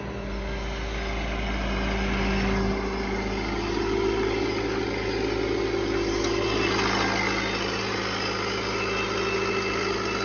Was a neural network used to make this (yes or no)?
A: no